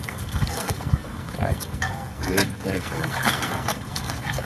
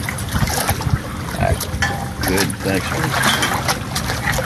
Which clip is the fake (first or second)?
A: first